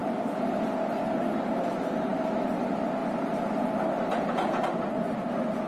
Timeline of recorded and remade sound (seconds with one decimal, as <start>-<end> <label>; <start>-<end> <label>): 0.0-5.7 recorded